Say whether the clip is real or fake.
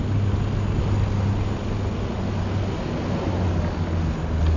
real